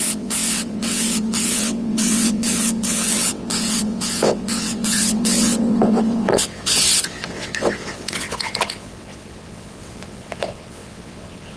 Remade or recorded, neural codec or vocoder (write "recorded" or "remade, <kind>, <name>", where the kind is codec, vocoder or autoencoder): remade, vocoder, WaveNeXt